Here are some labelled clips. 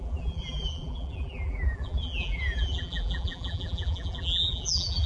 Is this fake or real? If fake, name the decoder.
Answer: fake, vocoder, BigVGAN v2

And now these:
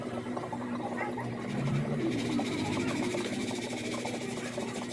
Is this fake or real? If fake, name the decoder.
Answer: fake, vocoder, BigVGAN v2